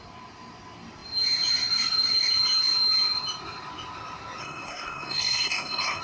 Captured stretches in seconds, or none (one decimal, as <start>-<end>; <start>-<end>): 0.0-4.4